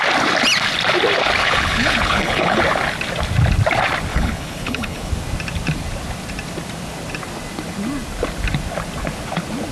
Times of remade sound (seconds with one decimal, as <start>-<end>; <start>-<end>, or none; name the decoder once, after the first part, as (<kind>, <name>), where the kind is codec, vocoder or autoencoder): 1.4-2.6 (codec, HILCodec); 4.1-5.1